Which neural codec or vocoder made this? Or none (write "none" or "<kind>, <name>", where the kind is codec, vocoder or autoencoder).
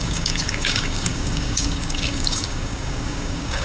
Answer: codec, DAC